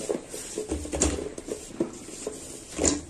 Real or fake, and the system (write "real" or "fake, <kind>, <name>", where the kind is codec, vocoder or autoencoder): real